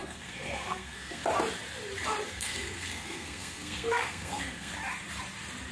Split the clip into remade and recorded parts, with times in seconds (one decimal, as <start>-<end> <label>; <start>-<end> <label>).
0.0-1.2 remade; 1.2-2.3 recorded; 2.3-4.7 remade; 4.7-5.7 recorded